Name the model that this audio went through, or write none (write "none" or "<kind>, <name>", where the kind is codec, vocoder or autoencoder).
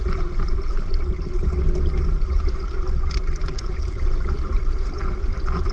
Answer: none